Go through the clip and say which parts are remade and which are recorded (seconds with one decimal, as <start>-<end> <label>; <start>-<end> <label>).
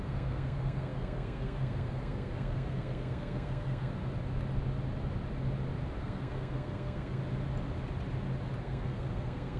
0.0-3.9 remade; 3.9-6.0 recorded; 6.0-7.2 remade; 7.2-8.6 recorded; 8.6-9.6 remade